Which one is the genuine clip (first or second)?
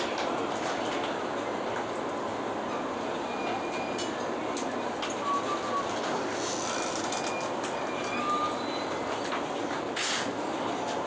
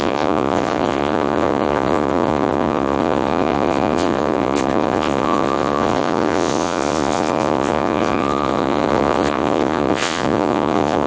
first